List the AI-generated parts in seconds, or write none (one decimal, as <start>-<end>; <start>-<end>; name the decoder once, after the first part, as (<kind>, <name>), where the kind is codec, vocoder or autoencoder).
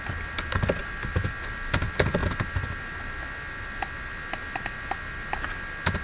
none